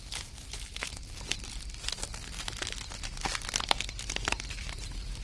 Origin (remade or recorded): recorded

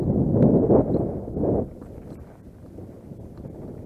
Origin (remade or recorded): recorded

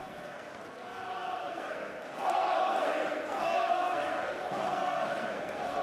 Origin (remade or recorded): remade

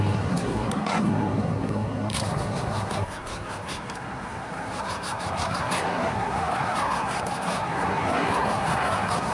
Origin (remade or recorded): remade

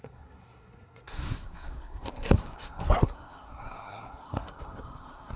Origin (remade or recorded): remade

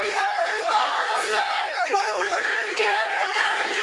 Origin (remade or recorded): remade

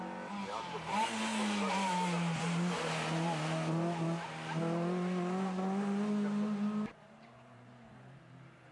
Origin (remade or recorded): recorded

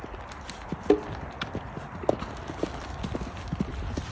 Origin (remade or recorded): recorded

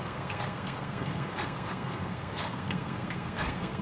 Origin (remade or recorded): remade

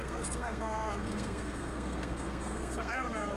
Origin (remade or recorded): remade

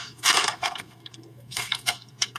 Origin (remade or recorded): remade